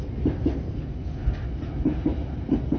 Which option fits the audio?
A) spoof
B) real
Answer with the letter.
B